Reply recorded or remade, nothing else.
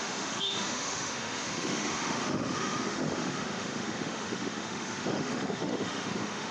remade